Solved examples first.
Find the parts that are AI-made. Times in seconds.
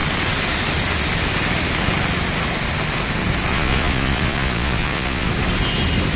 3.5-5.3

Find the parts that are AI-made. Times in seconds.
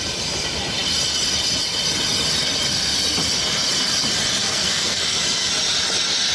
4.4-5.5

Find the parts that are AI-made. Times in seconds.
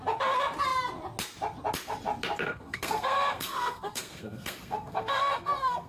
2.4-5.9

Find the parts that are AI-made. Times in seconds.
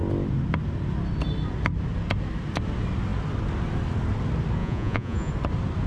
4.6-5.3